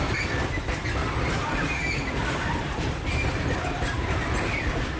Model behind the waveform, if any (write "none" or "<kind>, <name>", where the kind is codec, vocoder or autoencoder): none